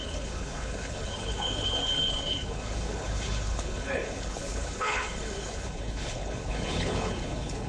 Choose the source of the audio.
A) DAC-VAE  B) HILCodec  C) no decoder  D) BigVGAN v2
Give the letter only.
B